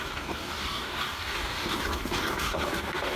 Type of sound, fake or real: fake